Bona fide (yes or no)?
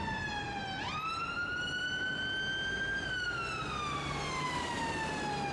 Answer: yes